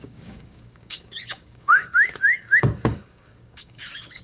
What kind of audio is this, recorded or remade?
remade